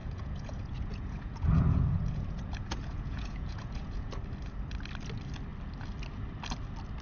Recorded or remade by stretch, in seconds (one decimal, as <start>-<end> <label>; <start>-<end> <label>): 0.0-4.2 remade; 4.2-7.0 recorded